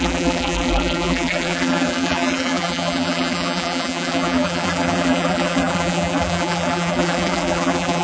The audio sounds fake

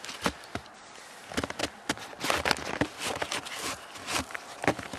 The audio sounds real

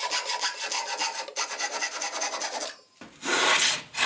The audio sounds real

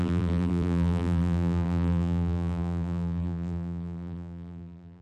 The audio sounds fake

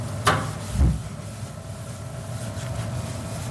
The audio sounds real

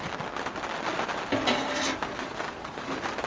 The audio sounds real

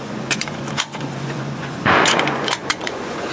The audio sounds fake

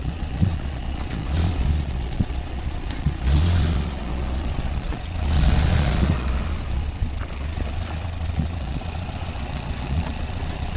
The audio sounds fake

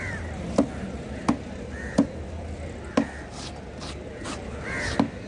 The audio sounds real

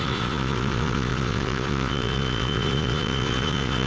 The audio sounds fake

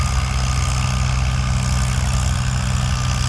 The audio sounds real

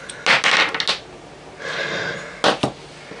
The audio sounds real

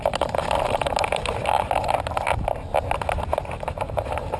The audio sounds real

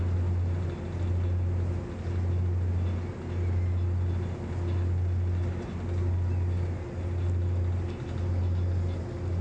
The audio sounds real